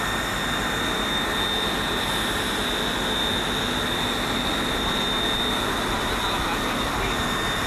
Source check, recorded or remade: recorded